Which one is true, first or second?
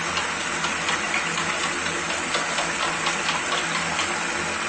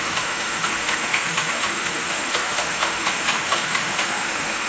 first